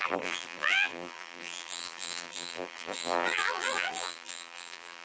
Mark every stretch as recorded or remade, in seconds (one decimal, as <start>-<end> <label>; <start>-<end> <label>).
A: 0.0-5.0 remade